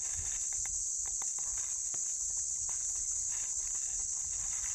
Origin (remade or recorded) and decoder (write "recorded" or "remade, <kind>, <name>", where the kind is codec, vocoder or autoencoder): recorded